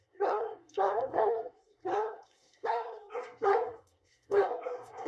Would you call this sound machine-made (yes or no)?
yes